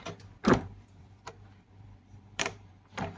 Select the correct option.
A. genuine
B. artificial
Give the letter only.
B